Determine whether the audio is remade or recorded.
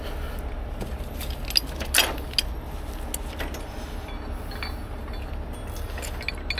recorded